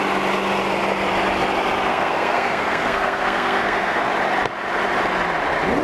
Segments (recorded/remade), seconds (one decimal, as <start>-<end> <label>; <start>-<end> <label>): 0.0-1.9 recorded; 1.9-4.0 remade; 4.0-5.8 recorded